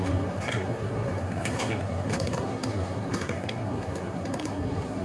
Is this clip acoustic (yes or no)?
no